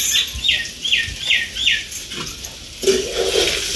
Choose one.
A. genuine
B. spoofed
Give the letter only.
A